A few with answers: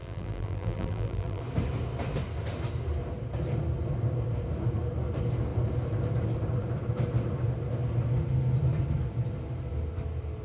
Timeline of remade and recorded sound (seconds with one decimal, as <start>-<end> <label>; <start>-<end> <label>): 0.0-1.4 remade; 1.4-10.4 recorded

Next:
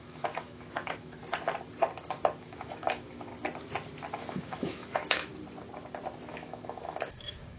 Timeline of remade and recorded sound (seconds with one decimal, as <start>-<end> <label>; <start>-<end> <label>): 0.0-1.2 remade; 1.2-2.4 recorded; 2.4-3.3 remade; 3.3-4.2 recorded; 4.2-5.3 remade; 5.3-6.3 recorded; 6.3-7.6 remade

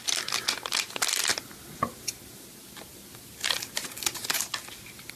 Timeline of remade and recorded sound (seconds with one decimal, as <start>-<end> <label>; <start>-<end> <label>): 0.0-5.2 recorded

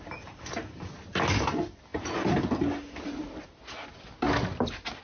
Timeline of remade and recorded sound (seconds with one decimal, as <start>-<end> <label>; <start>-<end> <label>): 0.0-5.0 recorded

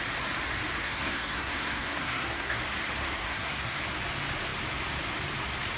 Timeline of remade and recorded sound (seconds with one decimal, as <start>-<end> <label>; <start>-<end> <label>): 0.0-0.7 recorded; 0.7-2.6 remade; 2.6-3.0 recorded; 3.0-3.8 remade; 3.8-5.8 recorded